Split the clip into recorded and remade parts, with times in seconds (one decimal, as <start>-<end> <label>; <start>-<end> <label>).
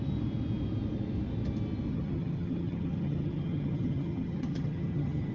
0.0-1.9 recorded; 1.9-5.3 remade